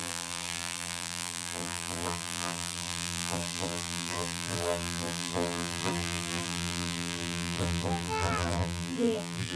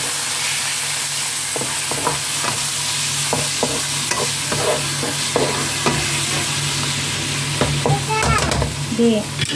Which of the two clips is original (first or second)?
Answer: second